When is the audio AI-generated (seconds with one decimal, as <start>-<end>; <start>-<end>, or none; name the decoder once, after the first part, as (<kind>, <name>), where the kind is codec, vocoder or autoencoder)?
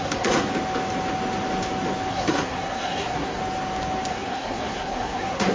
0.0-0.5 (codec, SNAC); 2.1-3.4; 4.1-5.5